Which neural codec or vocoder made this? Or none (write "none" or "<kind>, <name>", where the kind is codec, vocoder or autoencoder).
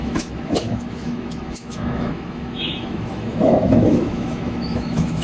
autoencoder, DAC-VAE